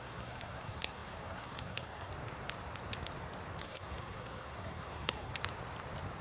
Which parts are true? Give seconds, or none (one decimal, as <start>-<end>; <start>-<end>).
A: 2.1-3.6; 5.3-6.2